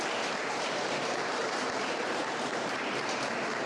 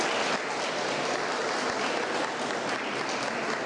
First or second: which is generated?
first